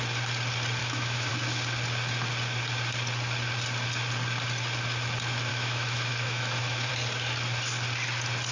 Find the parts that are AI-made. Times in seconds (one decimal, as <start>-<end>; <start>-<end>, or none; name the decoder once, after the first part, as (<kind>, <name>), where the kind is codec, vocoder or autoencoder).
0.8-1.3 (autoencoder, DAC-VAE); 5.5-6.9